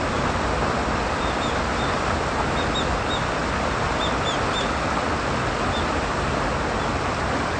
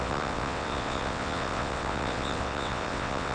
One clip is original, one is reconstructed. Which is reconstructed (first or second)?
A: second